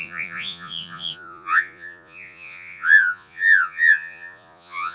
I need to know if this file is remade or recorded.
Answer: remade